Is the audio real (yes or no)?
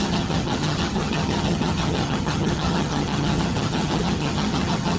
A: no